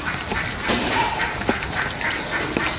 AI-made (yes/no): no